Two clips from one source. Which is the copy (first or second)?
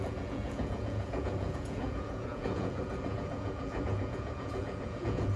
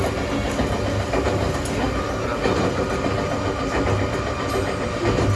first